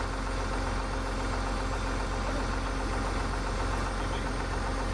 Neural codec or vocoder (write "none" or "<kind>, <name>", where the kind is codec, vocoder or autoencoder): none